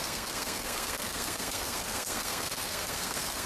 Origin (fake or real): fake